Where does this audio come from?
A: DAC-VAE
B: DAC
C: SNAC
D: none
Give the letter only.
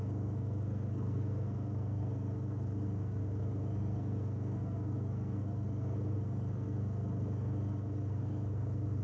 C